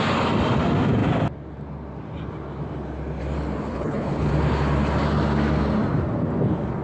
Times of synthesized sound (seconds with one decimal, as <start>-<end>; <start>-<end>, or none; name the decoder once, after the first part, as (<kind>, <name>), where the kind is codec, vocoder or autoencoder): 3.7-4.3 (codec, HILCodec)